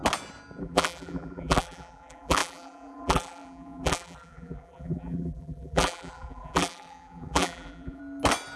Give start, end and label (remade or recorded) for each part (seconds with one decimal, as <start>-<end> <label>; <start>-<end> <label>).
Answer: 0.0-0.6 recorded; 0.6-8.0 remade; 8.0-8.6 recorded